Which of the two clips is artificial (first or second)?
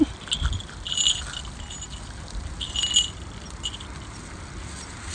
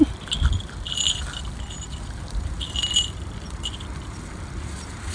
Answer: second